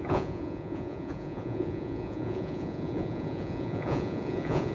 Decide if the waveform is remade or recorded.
remade